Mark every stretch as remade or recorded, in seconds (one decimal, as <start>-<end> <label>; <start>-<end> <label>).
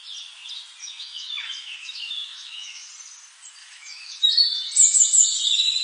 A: 0.0-0.8 recorded; 0.8-2.9 remade; 2.9-3.6 recorded; 3.6-4.3 remade; 4.3-5.8 recorded